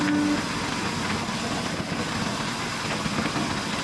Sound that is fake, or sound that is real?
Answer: real